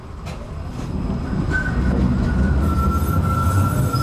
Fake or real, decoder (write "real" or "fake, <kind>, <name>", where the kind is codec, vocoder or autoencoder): real